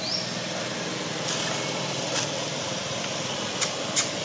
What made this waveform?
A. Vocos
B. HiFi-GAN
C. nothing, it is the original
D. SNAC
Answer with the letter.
C